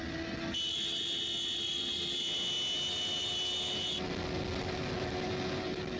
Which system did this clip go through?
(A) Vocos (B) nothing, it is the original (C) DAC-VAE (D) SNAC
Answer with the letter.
B